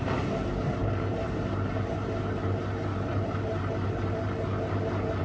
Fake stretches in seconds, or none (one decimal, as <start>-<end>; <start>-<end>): 0.0-4.5